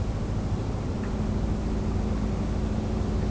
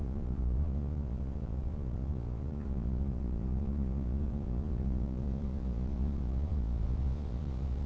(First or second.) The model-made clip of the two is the second